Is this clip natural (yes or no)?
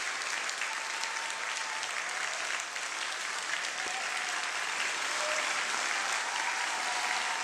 no